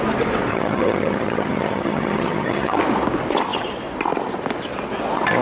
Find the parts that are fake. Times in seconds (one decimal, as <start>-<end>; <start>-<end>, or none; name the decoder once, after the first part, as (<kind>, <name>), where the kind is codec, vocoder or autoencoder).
0.5-2.8 (vocoder, HiFi-GAN)

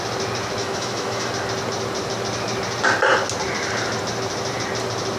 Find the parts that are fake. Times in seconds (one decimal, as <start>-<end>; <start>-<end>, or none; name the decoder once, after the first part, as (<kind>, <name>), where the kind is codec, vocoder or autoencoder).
0.6-1.3 (autoencoder, DAC-VAE)

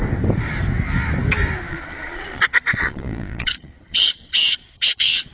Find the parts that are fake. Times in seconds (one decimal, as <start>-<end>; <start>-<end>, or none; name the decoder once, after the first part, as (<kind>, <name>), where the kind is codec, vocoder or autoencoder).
1.7-5.3 (vocoder, Vocos)